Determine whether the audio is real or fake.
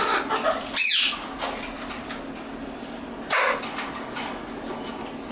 real